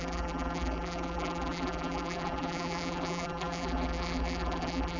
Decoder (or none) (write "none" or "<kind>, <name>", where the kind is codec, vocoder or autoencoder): vocoder, BigVGAN v2